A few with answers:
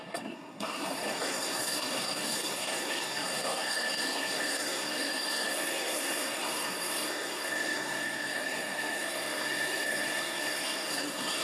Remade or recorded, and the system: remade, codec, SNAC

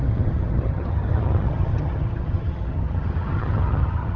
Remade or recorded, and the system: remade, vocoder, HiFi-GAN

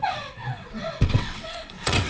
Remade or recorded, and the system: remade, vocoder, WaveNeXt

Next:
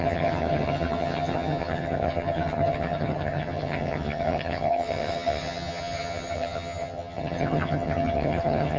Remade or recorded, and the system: remade, vocoder, HiFi-GAN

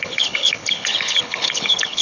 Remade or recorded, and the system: remade, codec, HILCodec